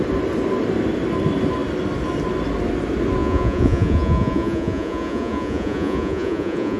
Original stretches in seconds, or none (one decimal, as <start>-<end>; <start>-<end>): 0.0-3.2